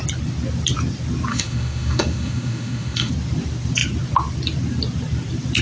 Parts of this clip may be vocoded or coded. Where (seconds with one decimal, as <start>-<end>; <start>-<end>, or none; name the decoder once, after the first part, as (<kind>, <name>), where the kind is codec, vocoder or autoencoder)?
1.3-3.1 (autoencoder, DAC-VAE)